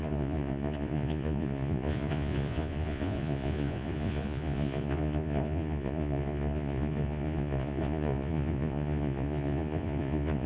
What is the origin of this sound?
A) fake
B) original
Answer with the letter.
A